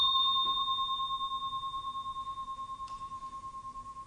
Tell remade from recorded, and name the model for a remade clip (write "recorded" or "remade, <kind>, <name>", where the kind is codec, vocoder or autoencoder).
remade, vocoder, BigVGAN v2